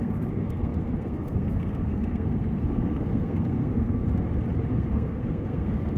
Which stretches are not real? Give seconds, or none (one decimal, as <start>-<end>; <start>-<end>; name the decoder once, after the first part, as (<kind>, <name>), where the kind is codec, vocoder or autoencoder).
0.0-4.0 (codec, SNAC); 4.7-6.0